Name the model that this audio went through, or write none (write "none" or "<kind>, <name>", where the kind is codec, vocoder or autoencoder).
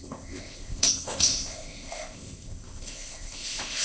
codec, ZipCodec